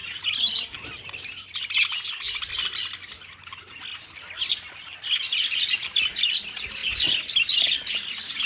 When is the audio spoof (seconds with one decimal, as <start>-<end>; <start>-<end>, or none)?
none